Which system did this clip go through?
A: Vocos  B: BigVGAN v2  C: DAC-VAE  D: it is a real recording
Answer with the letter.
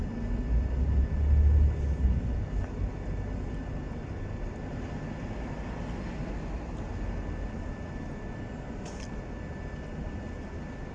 D